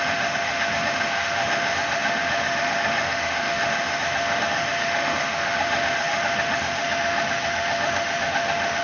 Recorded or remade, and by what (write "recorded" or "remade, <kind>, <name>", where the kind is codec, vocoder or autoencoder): remade, autoencoder, DAC-VAE